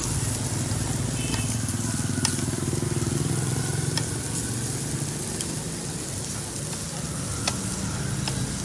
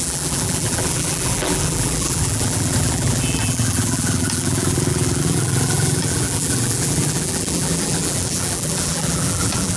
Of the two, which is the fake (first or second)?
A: second